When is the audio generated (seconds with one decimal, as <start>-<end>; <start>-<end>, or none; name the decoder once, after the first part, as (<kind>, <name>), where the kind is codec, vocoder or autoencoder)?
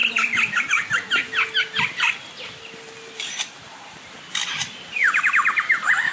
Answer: 5.0-6.1 (vocoder, BigVGAN v2)